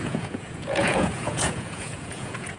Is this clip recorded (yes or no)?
no